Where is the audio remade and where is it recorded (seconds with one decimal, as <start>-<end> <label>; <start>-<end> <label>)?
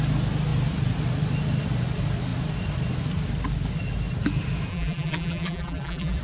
0.0-4.7 recorded; 4.7-6.2 remade